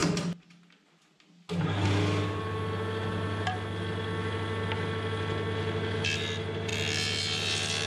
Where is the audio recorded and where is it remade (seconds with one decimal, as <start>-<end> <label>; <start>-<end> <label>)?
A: 0.0-7.9 recorded

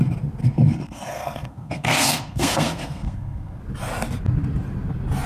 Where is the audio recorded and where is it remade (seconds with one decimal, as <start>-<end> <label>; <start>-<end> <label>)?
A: 0.0-0.4 recorded; 0.4-3.6 remade; 3.6-5.3 recorded

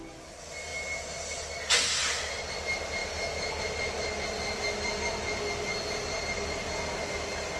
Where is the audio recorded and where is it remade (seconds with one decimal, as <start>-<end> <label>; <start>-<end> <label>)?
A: 0.0-7.6 recorded

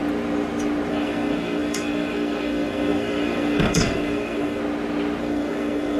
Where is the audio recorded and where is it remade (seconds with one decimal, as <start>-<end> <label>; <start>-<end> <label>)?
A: 0.0-0.9 recorded; 0.9-4.6 remade; 4.6-5.2 recorded; 5.2-6.0 remade